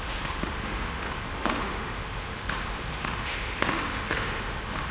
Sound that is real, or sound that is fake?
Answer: fake